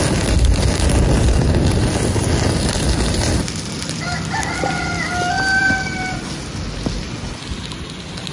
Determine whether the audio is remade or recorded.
recorded